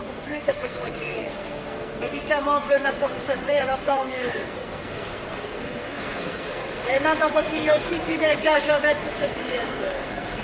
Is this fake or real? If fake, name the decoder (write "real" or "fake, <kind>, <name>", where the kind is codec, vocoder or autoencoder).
fake, codec, SNAC